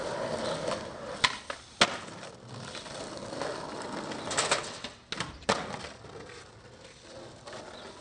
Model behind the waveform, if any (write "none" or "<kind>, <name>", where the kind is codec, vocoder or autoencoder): none